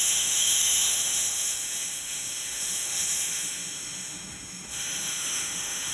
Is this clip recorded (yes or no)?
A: no